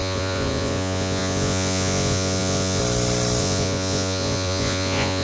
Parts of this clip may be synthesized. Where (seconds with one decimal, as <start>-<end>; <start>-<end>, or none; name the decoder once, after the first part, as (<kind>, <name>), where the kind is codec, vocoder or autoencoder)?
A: 0.0-2.8 (vocoder, Vocos); 3.4-5.2